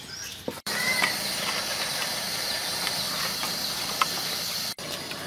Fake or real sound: fake